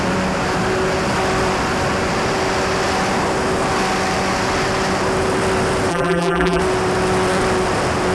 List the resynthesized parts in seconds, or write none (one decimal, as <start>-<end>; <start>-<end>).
5.9-6.6